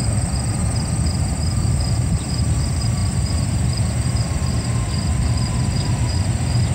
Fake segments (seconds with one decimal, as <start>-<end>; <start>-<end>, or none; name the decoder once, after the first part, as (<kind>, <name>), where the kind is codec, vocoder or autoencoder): 0.0-0.6 (vocoder, BigVGAN v2); 1.6-6.7